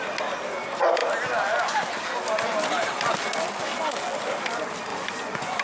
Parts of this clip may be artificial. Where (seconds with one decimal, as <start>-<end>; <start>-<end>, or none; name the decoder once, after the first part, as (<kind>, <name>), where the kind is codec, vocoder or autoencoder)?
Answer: 4.9-5.6 (vocoder, Vocos)